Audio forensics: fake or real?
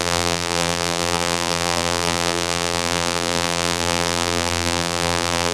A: fake